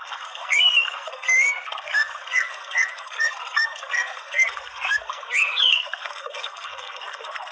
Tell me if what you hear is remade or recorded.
remade